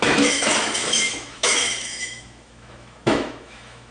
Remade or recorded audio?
remade